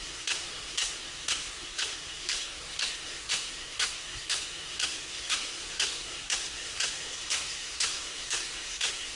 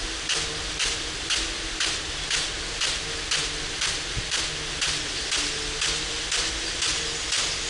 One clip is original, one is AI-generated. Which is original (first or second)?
second